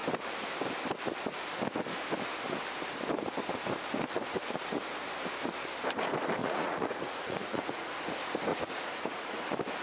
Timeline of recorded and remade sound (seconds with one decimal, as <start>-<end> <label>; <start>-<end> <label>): 0.0-6.4 recorded; 6.4-7.9 remade; 7.9-8.5 recorded; 8.5-9.4 remade; 9.4-9.8 recorded